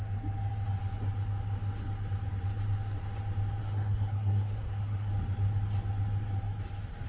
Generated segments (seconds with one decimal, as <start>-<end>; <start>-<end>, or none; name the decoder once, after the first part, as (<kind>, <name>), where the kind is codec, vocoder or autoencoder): 3.6-5.1 (codec, SNAC)